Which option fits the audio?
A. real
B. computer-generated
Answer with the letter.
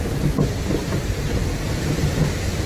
A